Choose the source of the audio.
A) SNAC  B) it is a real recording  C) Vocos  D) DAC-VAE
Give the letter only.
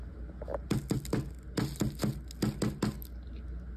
B